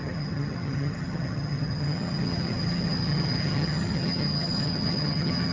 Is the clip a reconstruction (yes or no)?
yes